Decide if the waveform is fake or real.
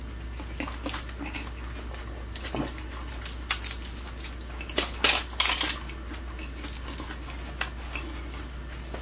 real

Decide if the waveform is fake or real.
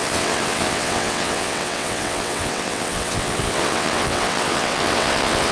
fake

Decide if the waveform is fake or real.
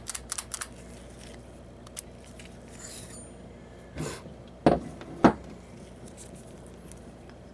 real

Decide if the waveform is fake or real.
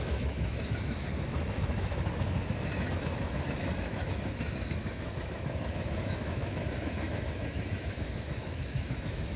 fake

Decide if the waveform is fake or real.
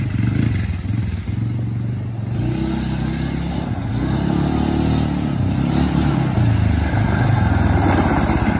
real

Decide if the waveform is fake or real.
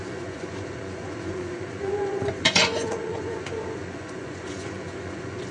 fake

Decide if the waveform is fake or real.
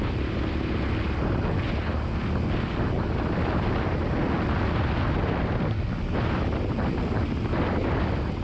real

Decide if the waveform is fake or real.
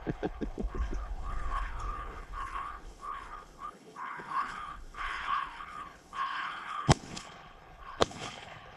fake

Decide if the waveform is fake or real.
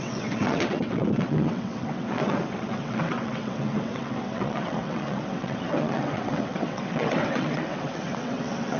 fake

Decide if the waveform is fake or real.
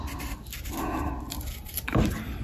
real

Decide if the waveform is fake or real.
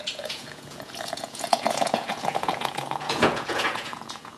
fake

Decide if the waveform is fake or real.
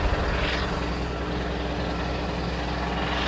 real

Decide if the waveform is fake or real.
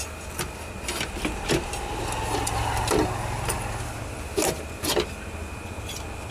real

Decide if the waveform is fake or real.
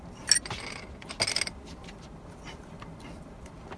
real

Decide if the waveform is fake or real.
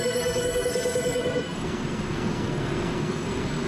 fake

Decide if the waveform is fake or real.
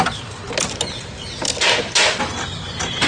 real